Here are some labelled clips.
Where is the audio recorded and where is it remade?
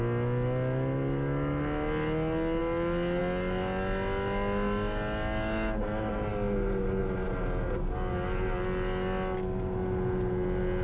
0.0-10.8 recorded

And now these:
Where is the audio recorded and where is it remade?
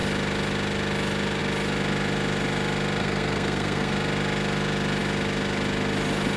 0.0-3.0 recorded; 3.0-3.9 remade; 3.9-6.4 recorded